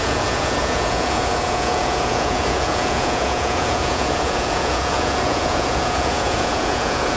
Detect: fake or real fake